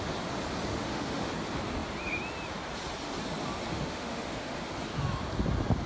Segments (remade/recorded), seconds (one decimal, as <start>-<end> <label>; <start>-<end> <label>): 0.0-0.7 recorded; 0.7-1.3 remade; 1.3-3.7 recorded; 3.7-4.6 remade; 4.6-5.9 recorded